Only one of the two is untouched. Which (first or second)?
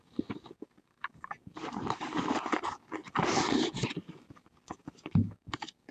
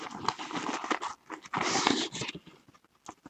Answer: second